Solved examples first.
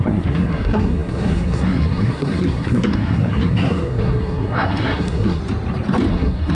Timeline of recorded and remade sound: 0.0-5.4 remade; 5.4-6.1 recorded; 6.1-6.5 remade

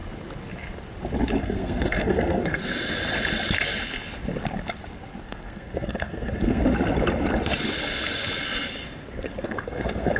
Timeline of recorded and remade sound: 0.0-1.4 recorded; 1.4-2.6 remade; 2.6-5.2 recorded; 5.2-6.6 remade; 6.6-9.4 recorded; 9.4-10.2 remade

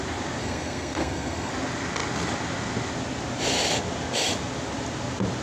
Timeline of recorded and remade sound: 0.0-0.4 recorded; 0.4-1.5 remade; 1.5-5.4 recorded